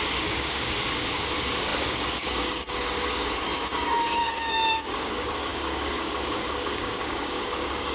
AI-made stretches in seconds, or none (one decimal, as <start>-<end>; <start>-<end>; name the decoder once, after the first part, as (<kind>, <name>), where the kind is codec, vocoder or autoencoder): 0.0-7.9 (codec, DAC)